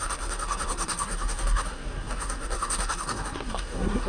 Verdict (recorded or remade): remade